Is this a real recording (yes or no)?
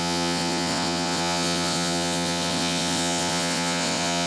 no